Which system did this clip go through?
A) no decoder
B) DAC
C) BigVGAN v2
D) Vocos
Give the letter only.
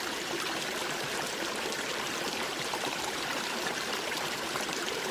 C